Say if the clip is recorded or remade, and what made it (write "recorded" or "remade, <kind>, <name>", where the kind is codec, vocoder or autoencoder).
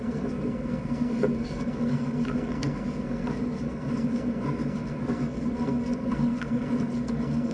remade, codec, SNAC